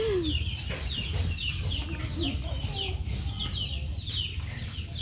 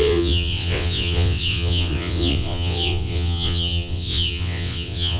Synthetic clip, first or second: second